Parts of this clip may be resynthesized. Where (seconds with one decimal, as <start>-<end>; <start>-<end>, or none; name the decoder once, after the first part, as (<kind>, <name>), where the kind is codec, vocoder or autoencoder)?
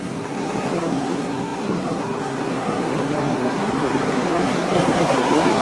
0.0-5.6 (codec, SNAC)